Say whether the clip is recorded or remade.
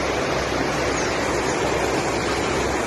recorded